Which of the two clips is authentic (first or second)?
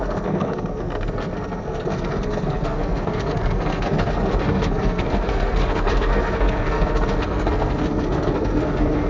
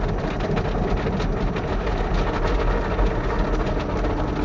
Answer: second